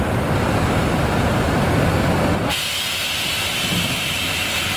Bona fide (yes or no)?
yes